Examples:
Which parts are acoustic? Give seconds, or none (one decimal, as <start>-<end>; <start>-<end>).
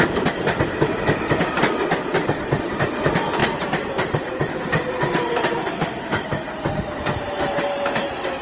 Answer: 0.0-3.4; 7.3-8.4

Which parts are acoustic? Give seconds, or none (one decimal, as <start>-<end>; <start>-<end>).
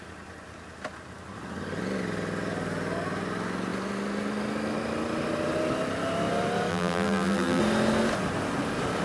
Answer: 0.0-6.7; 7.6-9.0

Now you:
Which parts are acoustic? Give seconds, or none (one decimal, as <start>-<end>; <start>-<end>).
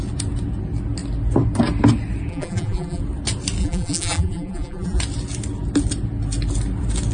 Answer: 0.0-2.3; 3.0-3.6; 5.0-7.1